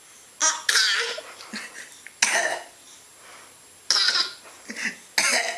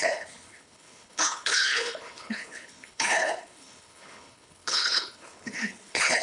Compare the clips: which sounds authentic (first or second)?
first